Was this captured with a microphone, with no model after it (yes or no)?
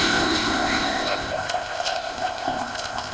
no